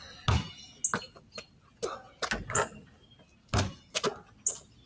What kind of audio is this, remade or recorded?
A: recorded